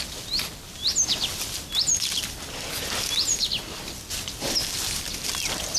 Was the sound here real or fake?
real